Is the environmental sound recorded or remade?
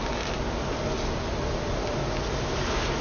recorded